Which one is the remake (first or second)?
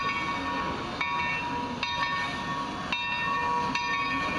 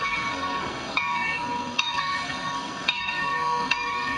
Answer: second